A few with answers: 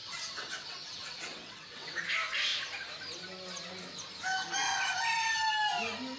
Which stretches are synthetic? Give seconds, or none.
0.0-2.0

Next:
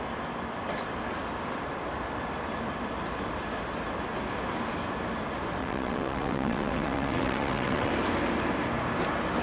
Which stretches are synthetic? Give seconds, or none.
5.6-7.9

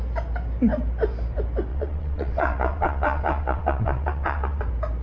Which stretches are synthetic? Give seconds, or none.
1.7-4.6

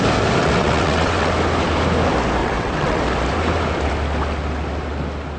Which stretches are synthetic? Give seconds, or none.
0.4-1.3; 2.4-3.0

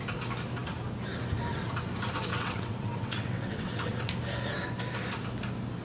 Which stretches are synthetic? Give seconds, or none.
2.3-4.1

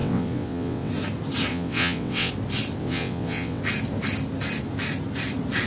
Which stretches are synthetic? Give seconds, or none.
0.0-0.9; 1.5-2.3; 2.8-3.6

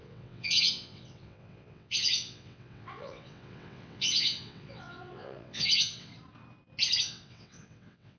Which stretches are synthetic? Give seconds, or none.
0.0-6.1; 7.0-8.2

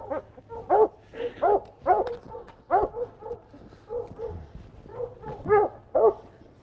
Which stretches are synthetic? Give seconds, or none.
2.1-2.8; 4.9-6.6